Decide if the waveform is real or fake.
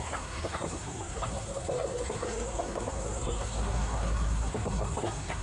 fake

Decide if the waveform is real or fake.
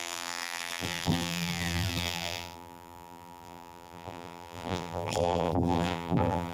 fake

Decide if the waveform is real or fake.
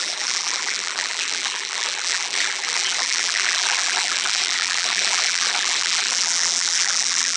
fake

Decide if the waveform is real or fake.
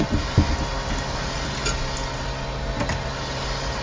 real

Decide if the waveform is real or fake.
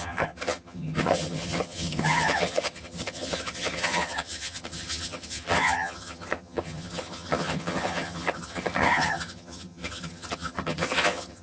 fake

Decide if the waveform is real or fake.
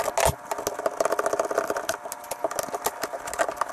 real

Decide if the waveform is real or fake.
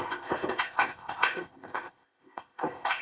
fake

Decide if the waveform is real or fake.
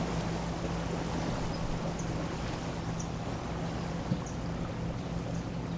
real